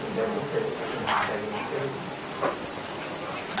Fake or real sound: real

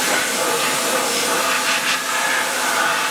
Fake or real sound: real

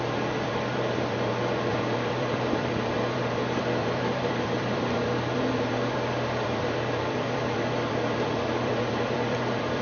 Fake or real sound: fake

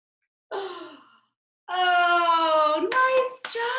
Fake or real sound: real